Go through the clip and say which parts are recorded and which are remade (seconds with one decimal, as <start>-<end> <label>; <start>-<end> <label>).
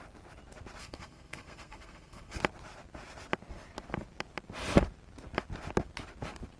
0.0-0.8 recorded; 0.8-2.4 remade; 2.4-6.6 recorded